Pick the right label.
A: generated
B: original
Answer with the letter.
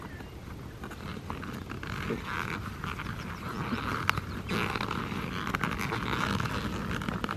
B